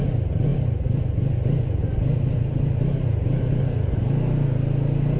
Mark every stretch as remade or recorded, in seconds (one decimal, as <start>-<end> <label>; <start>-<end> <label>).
0.0-5.2 recorded